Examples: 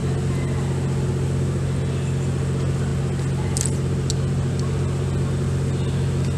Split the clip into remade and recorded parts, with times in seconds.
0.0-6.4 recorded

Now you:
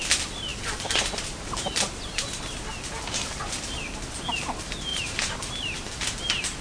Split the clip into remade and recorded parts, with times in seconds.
0.0-0.5 recorded; 0.5-2.4 remade; 2.4-4.9 recorded; 4.9-5.9 remade; 5.9-6.6 recorded